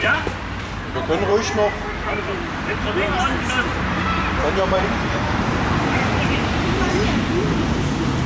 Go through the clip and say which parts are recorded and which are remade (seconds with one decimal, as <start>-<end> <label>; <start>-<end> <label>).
0.0-3.7 recorded; 3.7-5.5 remade; 5.5-8.3 recorded